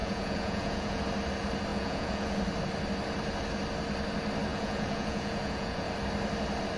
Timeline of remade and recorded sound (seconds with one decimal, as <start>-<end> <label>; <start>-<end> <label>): 0.0-1.0 remade; 1.0-1.7 recorded; 1.7-2.4 remade; 2.4-4.5 recorded; 4.5-5.9 remade; 5.9-6.8 recorded